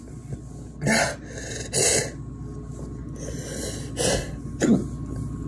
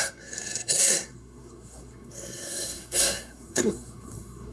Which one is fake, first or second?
second